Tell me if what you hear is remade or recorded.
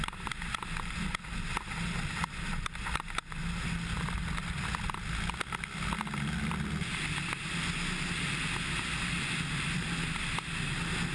recorded